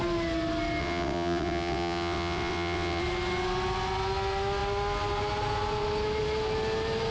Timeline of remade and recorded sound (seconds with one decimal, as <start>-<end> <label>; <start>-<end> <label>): 0.0-0.8 recorded; 0.8-3.0 remade; 3.0-7.1 recorded